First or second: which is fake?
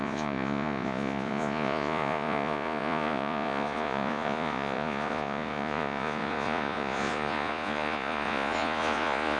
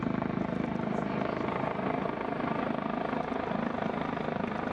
first